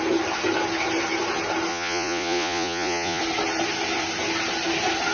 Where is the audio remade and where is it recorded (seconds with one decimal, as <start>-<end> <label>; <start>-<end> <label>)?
0.0-1.7 recorded; 1.7-3.2 remade; 3.2-5.1 recorded